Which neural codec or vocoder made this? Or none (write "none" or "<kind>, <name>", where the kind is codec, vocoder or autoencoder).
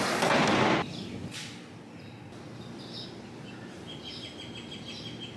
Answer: none